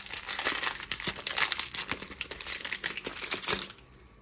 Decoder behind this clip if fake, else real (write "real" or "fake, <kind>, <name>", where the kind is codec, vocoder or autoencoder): real